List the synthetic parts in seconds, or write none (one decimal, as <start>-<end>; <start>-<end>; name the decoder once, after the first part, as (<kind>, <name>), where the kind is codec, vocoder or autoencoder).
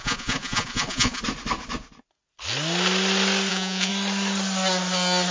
0.0-1.2 (vocoder, Vocos); 3.5-3.9